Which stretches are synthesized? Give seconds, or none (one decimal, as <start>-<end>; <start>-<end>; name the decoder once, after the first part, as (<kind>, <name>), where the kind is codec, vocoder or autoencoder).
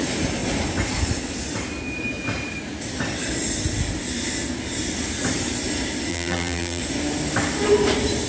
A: 6.1-6.8 (vocoder, BigVGAN v2)